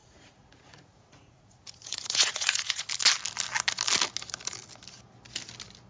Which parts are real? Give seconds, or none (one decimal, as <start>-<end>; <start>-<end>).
2.9-5.9